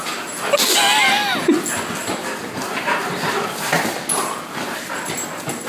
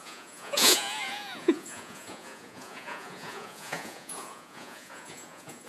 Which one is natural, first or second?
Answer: first